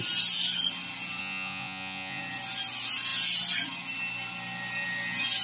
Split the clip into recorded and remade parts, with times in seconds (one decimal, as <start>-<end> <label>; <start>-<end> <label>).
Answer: 0.0-1.2 recorded; 1.2-2.2 remade; 2.2-5.4 recorded